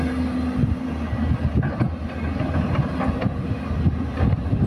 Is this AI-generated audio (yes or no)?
no